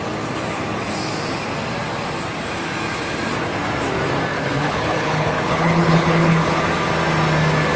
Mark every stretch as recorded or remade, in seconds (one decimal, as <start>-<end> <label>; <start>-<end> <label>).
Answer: 0.0-4.3 recorded; 4.3-6.6 remade; 6.6-7.8 recorded